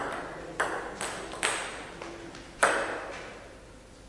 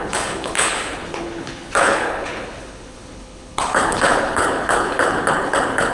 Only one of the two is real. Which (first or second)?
first